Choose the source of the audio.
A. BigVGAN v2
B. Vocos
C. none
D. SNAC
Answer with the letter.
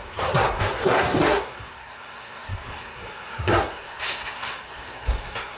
D